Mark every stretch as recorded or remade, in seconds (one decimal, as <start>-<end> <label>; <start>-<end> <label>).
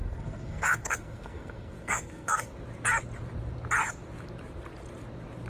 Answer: 0.0-2.5 remade; 2.5-5.5 recorded